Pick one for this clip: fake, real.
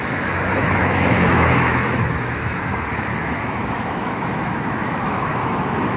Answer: fake